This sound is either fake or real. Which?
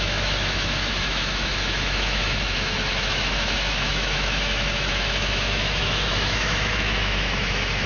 fake